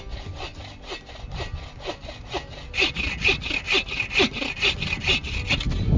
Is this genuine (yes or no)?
yes